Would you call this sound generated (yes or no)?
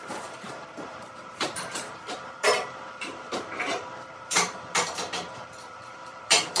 yes